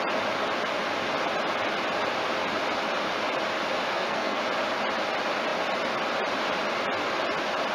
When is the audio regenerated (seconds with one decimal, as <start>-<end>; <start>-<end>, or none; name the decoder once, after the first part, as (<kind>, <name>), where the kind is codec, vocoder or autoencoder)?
3.9-4.4 (codec, SNAC)